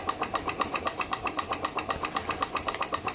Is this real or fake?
fake